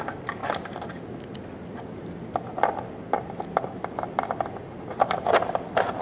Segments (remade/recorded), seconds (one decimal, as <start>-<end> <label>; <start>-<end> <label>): 0.0-6.0 recorded